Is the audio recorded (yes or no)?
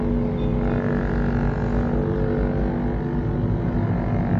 yes